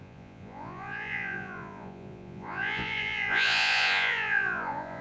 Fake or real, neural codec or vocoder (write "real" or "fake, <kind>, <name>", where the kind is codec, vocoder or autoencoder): fake, vocoder, Vocos